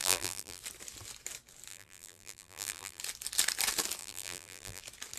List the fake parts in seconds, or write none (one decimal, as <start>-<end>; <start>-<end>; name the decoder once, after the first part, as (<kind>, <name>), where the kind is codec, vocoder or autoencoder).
0.0-0.6 (vocoder, BigVGAN v2); 1.7-3.0; 4.0-4.8